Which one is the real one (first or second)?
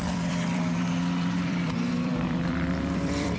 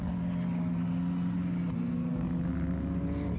second